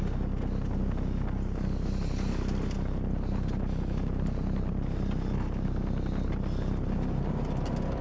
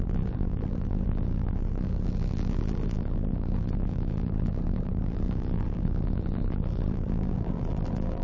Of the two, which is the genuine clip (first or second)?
first